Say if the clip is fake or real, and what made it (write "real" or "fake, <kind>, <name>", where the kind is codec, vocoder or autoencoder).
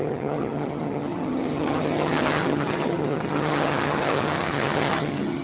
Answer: fake, vocoder, HiFi-GAN